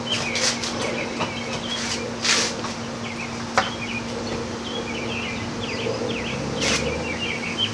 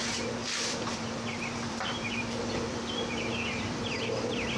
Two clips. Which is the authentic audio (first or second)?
first